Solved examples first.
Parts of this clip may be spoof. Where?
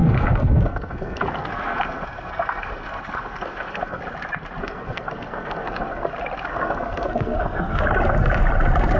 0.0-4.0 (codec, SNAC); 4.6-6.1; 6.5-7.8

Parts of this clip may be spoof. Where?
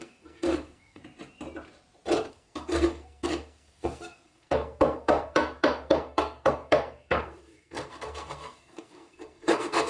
0.0-1.0 (codec, SNAC); 2.3-9.9